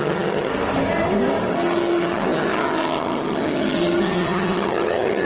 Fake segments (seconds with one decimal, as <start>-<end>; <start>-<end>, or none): 0.0-0.5; 1.5-5.3